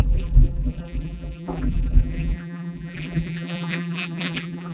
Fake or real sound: fake